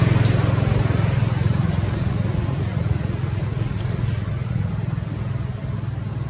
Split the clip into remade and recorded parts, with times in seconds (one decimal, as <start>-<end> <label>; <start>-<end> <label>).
0.0-1.3 recorded; 1.3-4.7 remade; 4.7-6.3 recorded